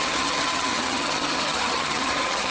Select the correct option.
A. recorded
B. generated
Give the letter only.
B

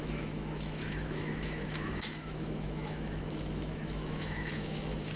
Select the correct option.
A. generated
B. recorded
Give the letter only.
A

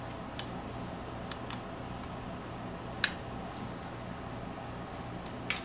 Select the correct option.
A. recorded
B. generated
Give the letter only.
A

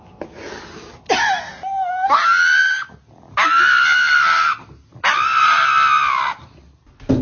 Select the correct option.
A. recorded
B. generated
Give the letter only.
A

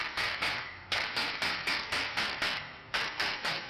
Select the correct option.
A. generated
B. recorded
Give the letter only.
A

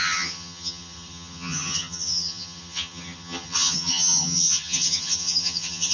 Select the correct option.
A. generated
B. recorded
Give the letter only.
A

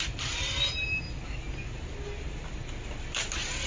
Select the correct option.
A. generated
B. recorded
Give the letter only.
B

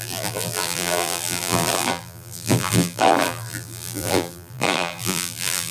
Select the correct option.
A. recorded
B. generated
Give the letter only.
B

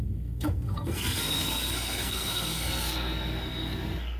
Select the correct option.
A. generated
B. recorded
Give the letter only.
A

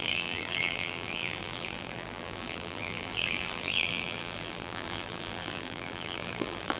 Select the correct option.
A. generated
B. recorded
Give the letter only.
A